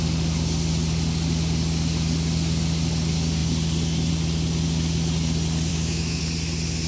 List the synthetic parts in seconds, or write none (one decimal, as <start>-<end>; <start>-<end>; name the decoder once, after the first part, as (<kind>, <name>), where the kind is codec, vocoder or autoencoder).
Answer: 5.7-6.2 (autoencoder, DAC-VAE)